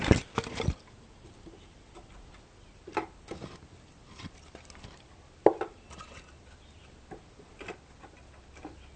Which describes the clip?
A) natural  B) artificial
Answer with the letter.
A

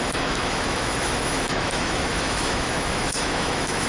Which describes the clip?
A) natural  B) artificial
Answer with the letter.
B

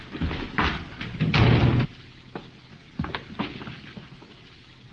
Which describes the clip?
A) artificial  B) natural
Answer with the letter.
B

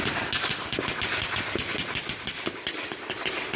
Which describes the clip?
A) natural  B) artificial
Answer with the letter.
A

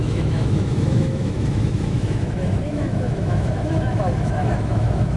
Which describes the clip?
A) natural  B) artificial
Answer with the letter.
B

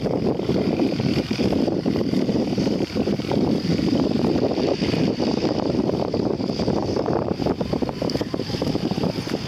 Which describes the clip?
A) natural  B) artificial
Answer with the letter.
B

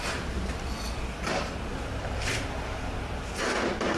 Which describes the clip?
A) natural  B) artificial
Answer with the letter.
B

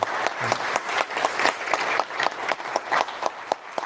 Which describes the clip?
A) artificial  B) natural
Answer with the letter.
A